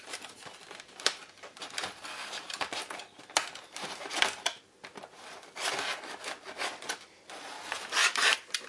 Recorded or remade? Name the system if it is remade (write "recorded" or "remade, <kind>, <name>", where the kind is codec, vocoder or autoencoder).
recorded